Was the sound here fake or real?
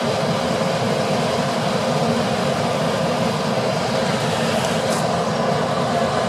real